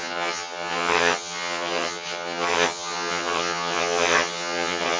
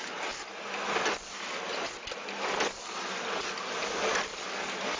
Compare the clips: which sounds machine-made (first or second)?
first